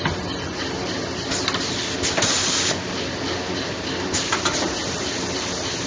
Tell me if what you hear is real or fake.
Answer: real